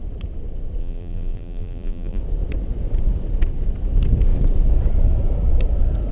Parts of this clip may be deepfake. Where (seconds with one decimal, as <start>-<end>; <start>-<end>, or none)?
0.8-2.2